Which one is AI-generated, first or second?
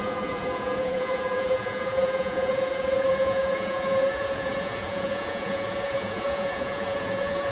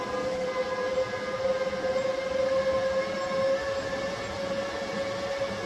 first